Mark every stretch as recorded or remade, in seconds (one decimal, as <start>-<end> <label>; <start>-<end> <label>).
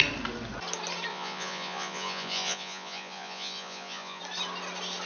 0.0-1.1 recorded; 1.1-4.2 remade; 4.2-5.1 recorded